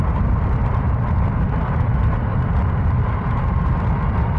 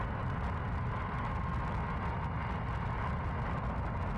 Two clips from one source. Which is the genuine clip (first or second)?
second